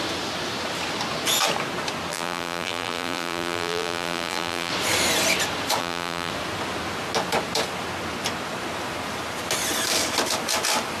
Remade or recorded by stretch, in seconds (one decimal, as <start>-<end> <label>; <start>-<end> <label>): 0.0-2.1 recorded; 2.1-4.7 remade; 4.7-5.8 recorded; 5.8-6.3 remade; 6.3-11.0 recorded